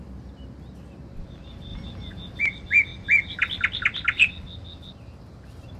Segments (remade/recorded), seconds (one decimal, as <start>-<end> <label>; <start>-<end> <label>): 0.0-5.8 recorded